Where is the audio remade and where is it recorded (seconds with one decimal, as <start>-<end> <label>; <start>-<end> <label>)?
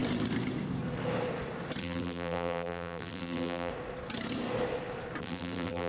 0.0-1.8 recorded; 1.8-3.7 remade; 3.7-5.2 recorded; 5.2-5.9 remade